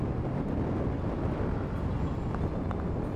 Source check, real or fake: real